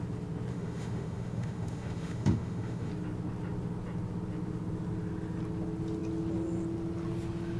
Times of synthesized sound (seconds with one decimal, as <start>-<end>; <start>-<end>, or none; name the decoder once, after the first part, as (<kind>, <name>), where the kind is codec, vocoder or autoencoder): 0.5-2.9 (autoencoder, DAC-VAE)

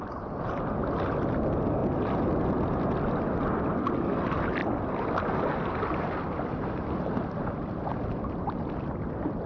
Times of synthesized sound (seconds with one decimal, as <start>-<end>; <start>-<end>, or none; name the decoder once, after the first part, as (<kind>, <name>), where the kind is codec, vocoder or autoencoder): none